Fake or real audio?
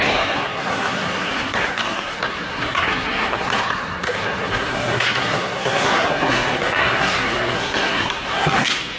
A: fake